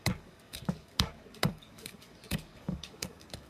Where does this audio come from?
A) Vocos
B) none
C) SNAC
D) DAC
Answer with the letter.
D